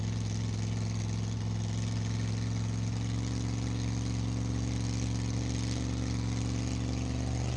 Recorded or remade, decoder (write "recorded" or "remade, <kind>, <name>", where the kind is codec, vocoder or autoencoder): recorded